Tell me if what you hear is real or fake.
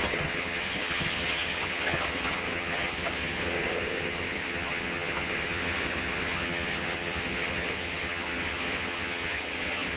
fake